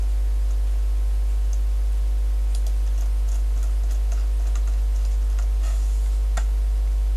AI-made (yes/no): no